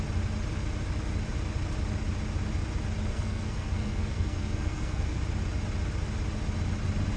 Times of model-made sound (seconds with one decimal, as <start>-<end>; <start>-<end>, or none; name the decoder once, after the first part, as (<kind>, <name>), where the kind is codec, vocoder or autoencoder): 3.1-5.2 (codec, SNAC)